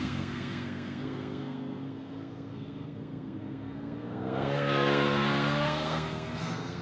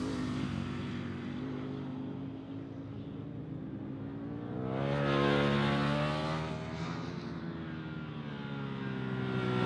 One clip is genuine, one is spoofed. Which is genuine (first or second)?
second